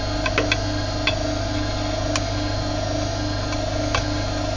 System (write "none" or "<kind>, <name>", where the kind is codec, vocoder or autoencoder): none